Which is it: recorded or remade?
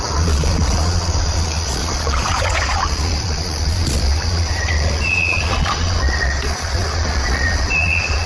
remade